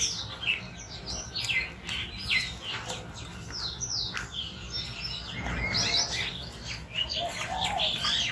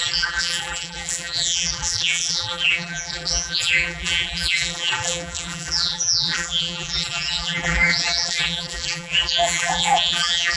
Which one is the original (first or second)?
first